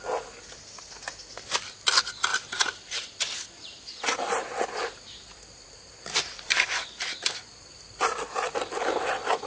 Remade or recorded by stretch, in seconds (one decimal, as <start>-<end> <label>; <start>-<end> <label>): 0.0-2.3 recorded; 2.3-3.1 remade; 3.1-4.4 recorded; 4.4-8.0 remade; 8.0-9.5 recorded